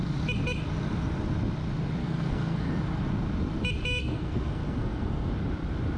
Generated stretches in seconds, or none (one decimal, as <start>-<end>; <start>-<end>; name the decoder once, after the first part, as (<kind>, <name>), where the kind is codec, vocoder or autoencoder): 2.0-2.7 (codec, SNAC); 4.0-5.3